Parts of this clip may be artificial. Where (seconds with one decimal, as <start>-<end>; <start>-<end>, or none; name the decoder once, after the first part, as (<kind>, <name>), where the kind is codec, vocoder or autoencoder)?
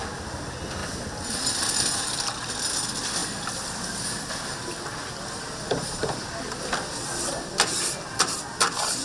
3.2-8.2 (vocoder, BigVGAN v2)